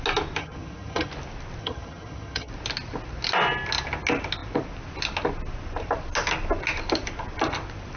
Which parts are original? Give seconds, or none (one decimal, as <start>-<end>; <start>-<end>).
0.0-0.4; 1.1-1.6; 2.5-8.0